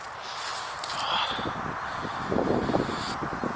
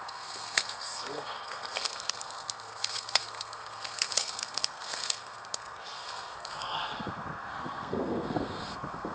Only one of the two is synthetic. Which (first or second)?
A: second